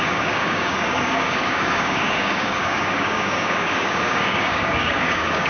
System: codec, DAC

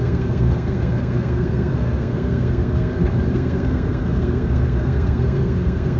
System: codec, SNAC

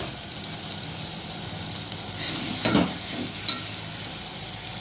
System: none